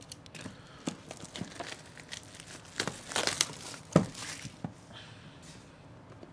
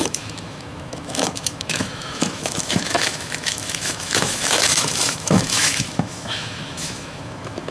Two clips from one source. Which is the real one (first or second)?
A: first